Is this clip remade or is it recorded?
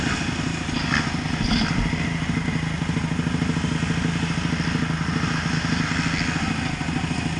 recorded